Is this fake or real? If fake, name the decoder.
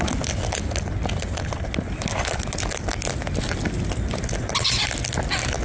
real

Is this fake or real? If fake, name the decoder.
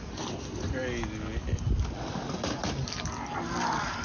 real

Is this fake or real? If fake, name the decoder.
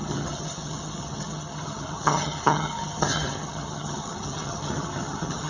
fake, vocoder, HiFi-GAN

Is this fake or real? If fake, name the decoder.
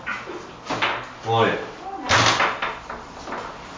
real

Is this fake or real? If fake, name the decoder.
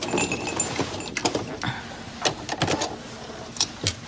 real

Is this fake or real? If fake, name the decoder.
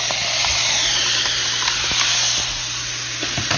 real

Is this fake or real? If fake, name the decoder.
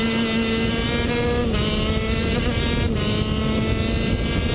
real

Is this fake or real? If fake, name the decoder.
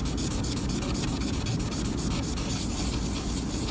real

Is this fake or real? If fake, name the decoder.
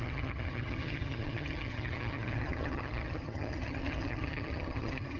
fake, vocoder, HiFi-GAN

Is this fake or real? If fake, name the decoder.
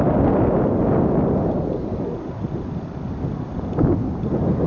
real